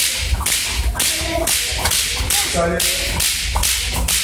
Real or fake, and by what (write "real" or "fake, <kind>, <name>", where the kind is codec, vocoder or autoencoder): real